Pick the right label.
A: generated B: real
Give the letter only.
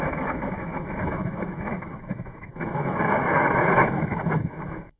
A